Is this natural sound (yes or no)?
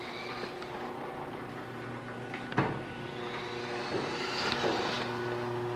yes